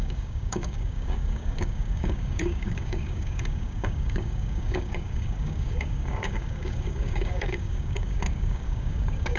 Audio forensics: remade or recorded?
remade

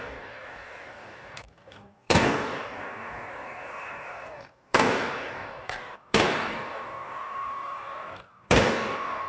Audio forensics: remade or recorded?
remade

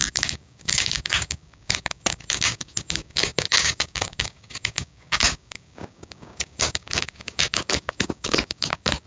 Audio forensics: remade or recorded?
remade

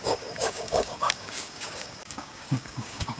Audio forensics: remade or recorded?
remade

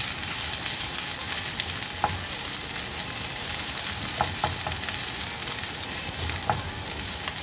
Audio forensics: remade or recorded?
recorded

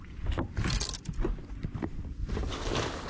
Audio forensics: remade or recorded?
recorded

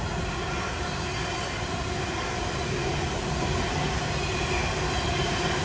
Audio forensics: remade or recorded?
recorded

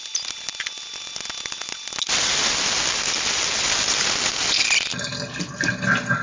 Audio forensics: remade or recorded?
recorded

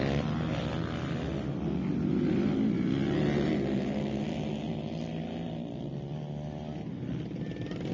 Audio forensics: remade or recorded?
recorded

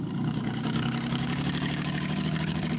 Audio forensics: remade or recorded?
remade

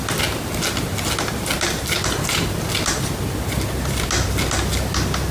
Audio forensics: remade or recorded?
recorded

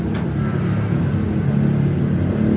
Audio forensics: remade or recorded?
recorded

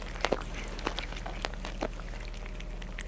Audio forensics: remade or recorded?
recorded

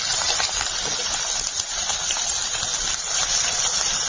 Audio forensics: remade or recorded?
recorded